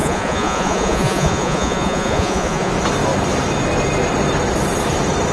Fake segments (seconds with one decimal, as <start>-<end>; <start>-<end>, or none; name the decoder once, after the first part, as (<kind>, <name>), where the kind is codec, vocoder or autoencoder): 0.0-2.7 (vocoder, Vocos)